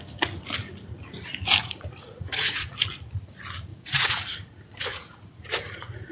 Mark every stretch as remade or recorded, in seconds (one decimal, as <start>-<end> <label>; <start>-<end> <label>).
0.0-1.6 recorded; 1.6-2.7 remade; 2.7-3.7 recorded; 3.7-6.1 remade